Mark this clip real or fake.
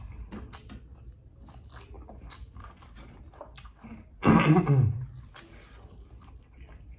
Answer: real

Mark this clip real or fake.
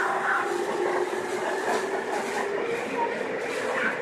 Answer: real